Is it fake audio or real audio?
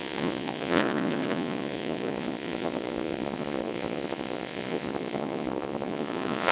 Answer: fake